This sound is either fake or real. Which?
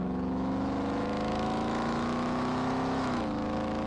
fake